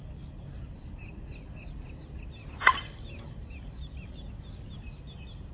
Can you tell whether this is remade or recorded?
recorded